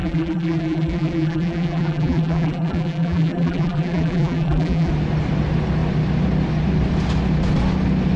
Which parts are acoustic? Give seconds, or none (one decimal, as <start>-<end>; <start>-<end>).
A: 4.9-8.2